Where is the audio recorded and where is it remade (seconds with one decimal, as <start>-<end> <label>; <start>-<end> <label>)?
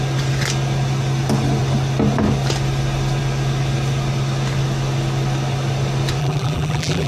0.0-6.2 recorded; 6.2-7.1 remade